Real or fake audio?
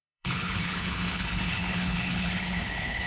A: fake